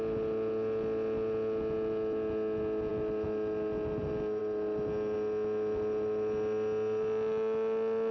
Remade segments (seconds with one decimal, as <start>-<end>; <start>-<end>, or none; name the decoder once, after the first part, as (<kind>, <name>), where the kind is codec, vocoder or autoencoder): none